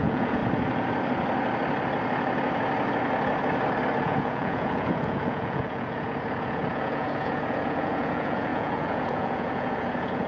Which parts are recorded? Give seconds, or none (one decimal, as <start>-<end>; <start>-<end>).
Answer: 0.4-4.0